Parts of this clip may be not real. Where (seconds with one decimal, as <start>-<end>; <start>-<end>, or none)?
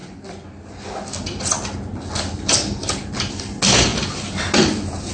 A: none